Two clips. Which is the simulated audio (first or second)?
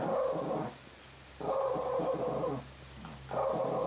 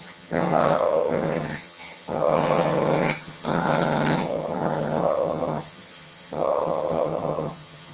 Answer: second